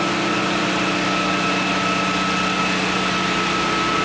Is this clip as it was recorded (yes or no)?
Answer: yes